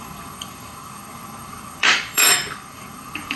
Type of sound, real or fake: fake